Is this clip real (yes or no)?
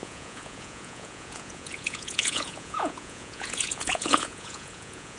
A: no